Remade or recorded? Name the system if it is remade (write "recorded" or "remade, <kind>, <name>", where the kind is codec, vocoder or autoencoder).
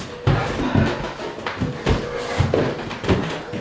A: recorded